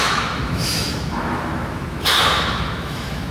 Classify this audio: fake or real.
fake